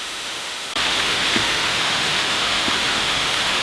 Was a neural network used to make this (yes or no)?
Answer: yes